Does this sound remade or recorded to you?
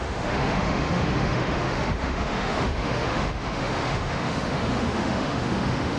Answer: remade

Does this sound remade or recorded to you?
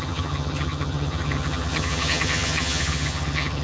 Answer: remade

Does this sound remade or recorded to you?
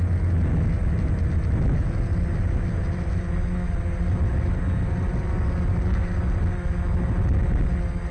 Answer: recorded